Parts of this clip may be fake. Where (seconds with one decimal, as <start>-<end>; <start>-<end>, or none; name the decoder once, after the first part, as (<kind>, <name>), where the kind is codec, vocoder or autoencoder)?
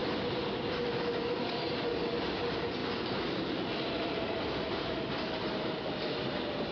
2.8-5.4 (vocoder, BigVGAN v2)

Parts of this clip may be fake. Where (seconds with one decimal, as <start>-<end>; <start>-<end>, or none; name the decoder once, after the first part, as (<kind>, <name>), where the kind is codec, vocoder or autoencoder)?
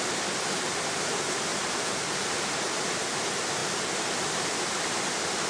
none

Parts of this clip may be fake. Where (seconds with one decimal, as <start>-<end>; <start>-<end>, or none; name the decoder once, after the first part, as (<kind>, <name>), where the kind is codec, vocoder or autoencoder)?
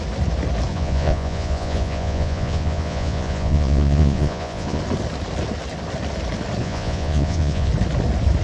0.7-4.8 (vocoder, Vocos); 6.6-7.7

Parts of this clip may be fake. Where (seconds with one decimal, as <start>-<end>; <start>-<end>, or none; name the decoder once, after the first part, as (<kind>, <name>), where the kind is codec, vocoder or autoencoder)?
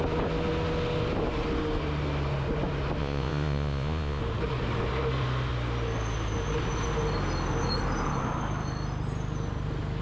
3.0-4.2 (vocoder, Vocos)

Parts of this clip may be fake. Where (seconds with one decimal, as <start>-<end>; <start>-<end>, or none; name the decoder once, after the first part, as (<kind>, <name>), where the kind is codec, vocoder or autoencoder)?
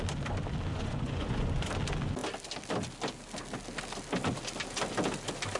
0.7-1.7 (vocoder, Vocos)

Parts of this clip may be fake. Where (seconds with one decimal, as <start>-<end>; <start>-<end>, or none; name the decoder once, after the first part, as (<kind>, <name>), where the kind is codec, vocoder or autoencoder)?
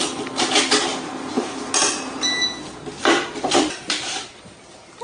0.9-1.6 (vocoder, BigVGAN v2); 3.0-4.3